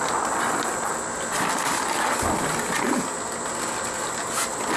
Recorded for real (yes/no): yes